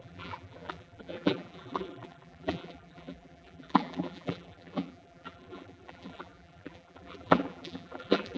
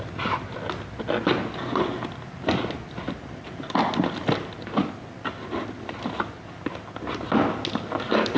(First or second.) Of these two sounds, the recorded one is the second